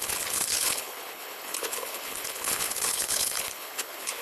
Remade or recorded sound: remade